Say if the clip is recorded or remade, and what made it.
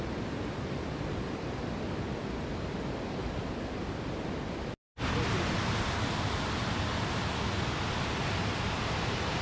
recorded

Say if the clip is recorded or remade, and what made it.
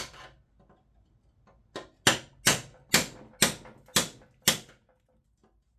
recorded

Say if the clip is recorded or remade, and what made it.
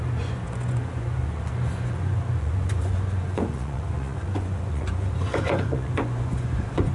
remade, vocoder, Vocos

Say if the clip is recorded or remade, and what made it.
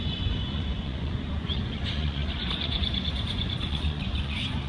remade, vocoder, Vocos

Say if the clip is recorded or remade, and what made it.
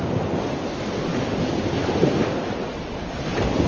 recorded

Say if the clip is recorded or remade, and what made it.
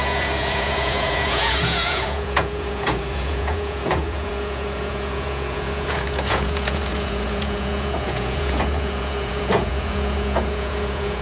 remade, vocoder, Vocos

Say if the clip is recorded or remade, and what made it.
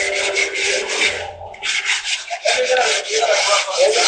recorded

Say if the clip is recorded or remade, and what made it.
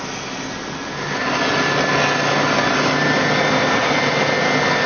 recorded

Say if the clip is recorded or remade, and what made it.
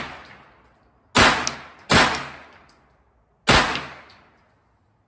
recorded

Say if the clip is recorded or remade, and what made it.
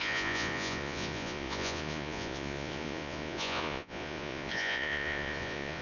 remade, vocoder, Vocos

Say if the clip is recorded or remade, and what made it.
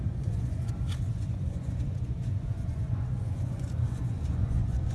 remade, vocoder, Vocos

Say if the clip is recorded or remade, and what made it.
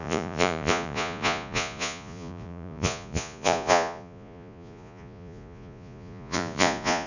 remade, vocoder, Vocos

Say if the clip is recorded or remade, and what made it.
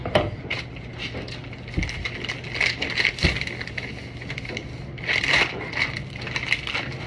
recorded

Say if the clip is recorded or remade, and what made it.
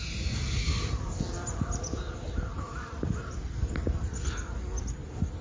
recorded